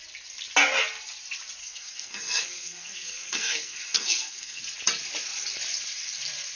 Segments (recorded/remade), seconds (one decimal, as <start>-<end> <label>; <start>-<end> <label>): 0.0-1.6 recorded; 1.6-4.6 remade; 4.6-6.6 recorded